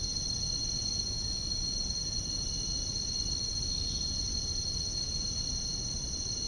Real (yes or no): yes